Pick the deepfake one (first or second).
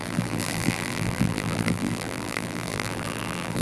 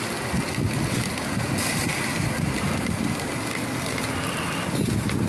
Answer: first